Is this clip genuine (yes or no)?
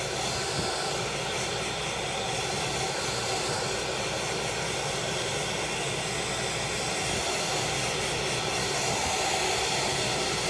yes